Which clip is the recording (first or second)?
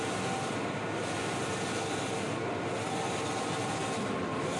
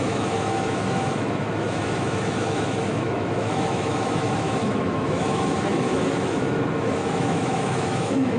first